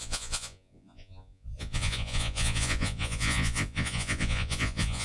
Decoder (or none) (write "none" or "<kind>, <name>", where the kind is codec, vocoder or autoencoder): vocoder, Vocos